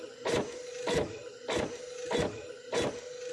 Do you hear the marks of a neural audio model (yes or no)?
no